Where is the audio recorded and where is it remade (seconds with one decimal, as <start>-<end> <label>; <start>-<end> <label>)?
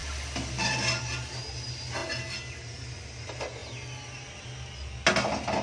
0.0-5.6 recorded